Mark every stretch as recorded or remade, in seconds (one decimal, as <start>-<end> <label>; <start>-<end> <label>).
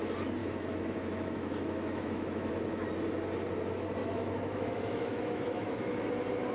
0.0-0.4 recorded; 0.4-2.5 remade; 2.5-4.0 recorded; 4.0-6.1 remade; 6.1-6.5 recorded